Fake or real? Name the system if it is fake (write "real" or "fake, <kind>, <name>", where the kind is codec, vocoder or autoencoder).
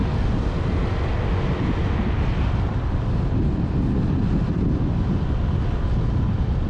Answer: real